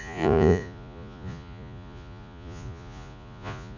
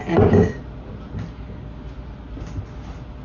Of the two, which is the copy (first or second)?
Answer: first